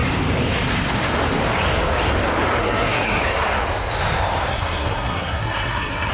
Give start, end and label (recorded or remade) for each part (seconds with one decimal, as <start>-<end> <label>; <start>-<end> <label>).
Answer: 0.0-2.6 recorded; 2.6-3.2 remade; 3.2-4.5 recorded; 4.5-6.1 remade